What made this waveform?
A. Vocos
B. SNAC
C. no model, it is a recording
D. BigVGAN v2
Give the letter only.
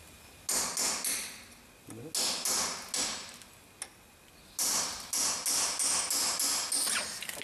C